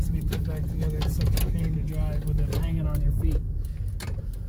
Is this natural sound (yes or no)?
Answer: yes